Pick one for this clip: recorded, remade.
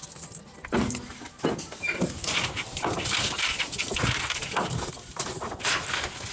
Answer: recorded